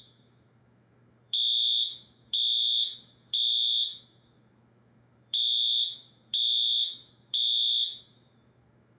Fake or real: fake